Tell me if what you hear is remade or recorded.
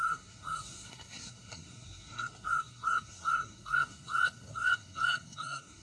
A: remade